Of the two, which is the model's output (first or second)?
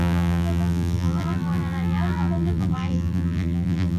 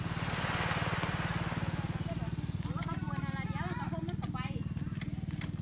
first